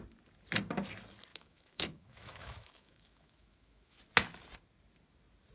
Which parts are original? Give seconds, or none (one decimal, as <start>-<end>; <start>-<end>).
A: 0.0-1.3; 4.0-5.5